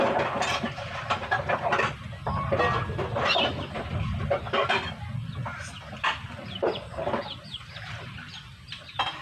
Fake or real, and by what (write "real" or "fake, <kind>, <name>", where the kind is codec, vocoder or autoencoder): real